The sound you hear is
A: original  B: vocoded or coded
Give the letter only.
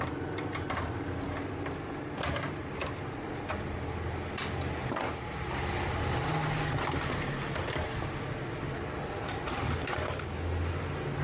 A